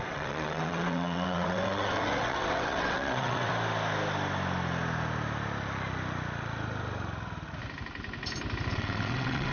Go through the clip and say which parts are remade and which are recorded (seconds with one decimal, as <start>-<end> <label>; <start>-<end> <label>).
0.0-3.5 remade; 3.5-8.7 recorded; 8.7-9.5 remade